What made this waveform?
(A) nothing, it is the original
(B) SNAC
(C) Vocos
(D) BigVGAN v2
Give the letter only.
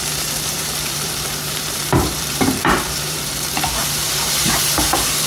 D